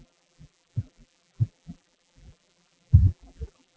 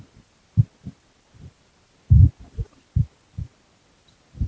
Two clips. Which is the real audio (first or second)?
second